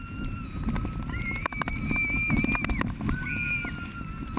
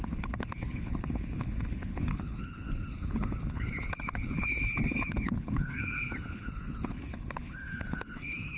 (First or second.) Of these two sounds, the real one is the first